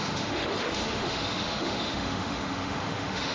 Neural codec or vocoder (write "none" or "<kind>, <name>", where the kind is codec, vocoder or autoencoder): autoencoder, DAC-VAE